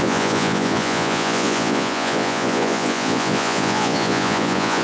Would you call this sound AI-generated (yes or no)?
yes